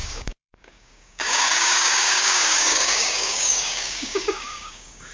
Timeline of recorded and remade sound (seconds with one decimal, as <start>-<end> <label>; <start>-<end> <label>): 0.0-5.1 remade